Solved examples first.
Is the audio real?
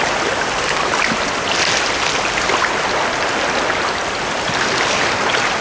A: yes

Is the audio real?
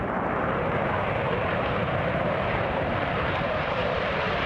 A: no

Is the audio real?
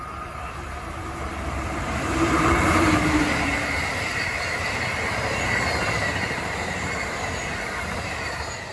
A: no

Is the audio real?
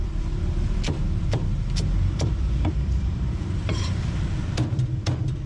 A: no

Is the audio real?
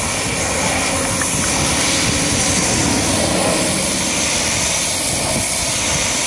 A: yes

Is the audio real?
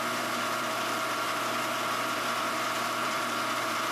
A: no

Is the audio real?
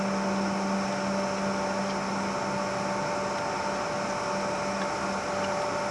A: yes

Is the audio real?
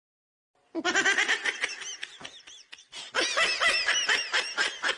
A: yes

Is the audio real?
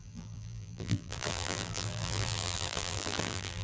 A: no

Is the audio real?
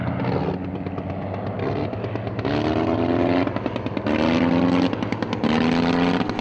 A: yes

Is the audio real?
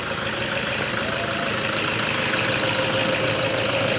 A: yes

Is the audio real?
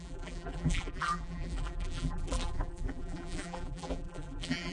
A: no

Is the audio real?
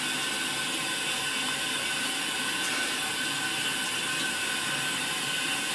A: yes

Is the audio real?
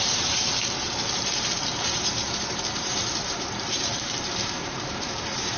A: no